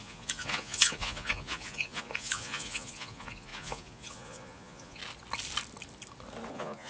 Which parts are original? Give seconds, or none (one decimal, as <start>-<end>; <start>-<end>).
5.0-6.5